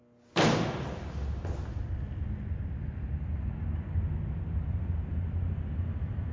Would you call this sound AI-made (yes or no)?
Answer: no